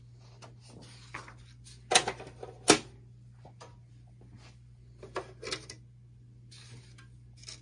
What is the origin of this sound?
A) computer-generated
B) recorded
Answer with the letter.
B